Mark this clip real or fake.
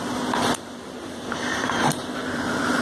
fake